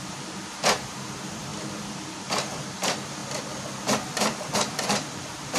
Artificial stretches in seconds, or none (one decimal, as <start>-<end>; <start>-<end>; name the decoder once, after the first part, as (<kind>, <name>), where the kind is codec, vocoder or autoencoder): 0.0-1.5 (vocoder, BigVGAN v2); 2.1-3.2; 4.2-5.6